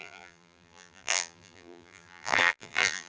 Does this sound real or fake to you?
fake